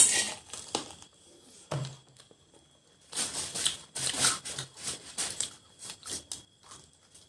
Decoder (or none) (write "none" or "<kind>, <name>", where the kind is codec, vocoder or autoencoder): none